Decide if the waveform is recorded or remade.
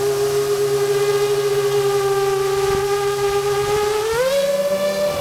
recorded